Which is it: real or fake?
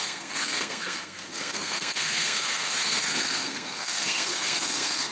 fake